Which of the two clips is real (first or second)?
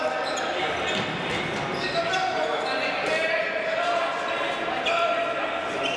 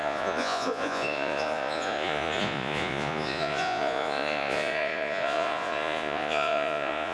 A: first